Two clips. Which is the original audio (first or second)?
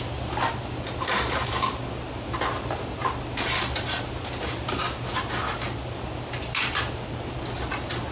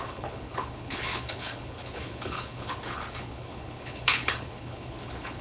first